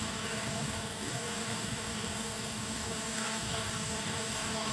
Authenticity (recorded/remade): remade